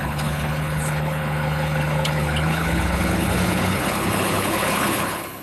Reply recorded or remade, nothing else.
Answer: remade